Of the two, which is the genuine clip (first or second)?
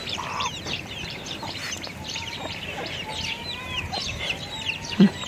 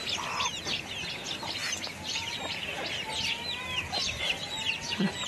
second